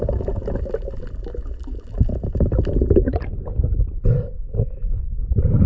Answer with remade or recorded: recorded